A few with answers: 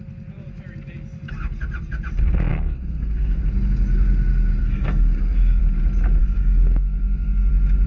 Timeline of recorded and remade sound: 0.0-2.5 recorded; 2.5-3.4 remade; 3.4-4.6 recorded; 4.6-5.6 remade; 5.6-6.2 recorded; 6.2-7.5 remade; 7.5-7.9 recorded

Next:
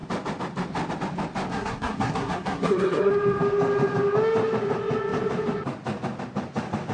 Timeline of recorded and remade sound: 0.0-1.5 recorded; 1.5-3.1 remade; 3.1-6.9 recorded

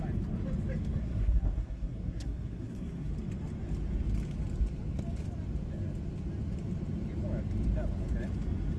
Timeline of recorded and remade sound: 0.0-1.0 recorded; 1.0-3.1 remade; 3.1-8.8 recorded

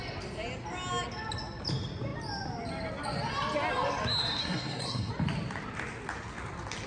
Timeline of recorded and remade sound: 0.0-4.4 recorded; 4.4-5.1 remade; 5.1-6.9 recorded